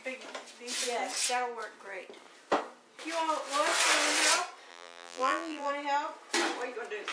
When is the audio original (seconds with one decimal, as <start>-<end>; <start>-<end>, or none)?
0.0-4.7; 5.7-7.1